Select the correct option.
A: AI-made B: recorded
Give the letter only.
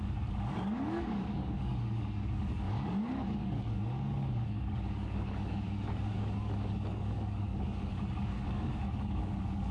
A